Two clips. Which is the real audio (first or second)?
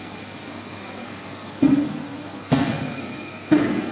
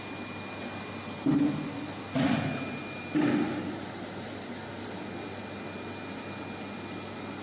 second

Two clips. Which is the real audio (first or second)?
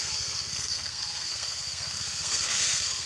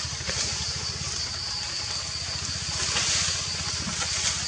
second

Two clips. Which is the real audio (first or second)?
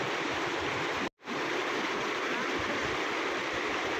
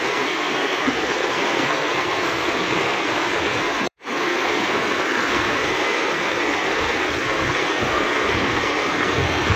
first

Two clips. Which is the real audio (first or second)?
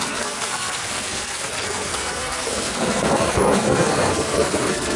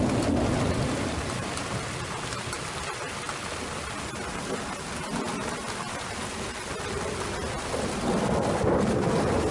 second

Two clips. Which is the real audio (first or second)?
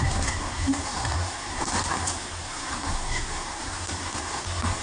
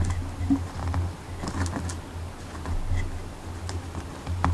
second